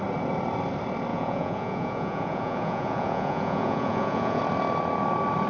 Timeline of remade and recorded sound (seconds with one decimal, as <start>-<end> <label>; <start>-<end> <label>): 0.0-1.1 recorded; 1.1-4.4 remade; 4.4-5.5 recorded